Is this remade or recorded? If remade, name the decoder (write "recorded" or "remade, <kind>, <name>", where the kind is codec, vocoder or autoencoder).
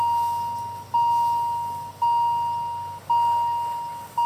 recorded